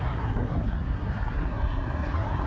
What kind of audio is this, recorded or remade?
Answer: remade